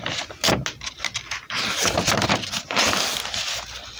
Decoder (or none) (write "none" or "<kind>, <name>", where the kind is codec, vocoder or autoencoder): none